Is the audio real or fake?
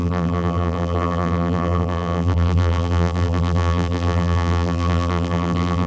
fake